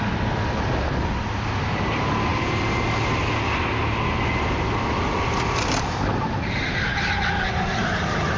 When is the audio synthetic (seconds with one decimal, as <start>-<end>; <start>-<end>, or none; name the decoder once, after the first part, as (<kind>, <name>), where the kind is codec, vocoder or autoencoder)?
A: none